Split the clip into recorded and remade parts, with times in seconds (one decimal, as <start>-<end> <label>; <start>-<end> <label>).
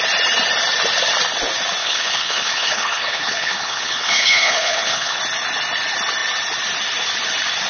0.0-1.8 recorded; 1.8-5.2 remade; 5.2-7.7 recorded